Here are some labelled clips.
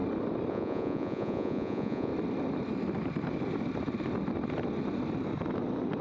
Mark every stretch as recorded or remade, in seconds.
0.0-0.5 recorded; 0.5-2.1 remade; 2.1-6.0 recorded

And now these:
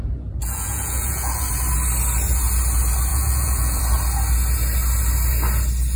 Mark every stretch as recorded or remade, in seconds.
0.0-0.4 recorded; 0.4-1.5 remade; 1.5-3.1 recorded; 3.1-3.8 remade; 3.8-6.0 recorded

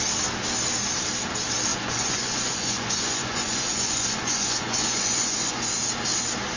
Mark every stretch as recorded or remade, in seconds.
0.0-1.7 recorded; 1.7-5.7 remade; 5.7-6.6 recorded